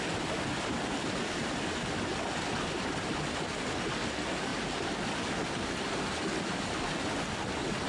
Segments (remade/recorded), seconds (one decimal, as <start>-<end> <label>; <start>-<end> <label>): 0.0-7.9 recorded